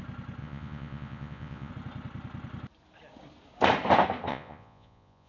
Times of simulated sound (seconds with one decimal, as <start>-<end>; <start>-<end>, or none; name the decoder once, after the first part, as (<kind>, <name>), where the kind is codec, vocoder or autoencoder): 0.4-1.7 (vocoder, Vocos); 4.3-5.3